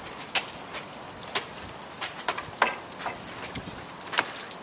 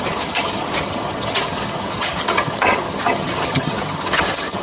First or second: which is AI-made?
second